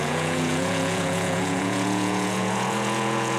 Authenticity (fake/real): fake